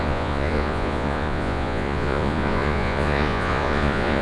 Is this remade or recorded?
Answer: remade